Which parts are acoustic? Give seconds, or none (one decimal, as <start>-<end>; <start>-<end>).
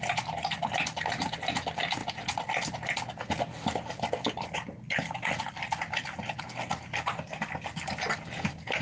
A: 0.0-8.8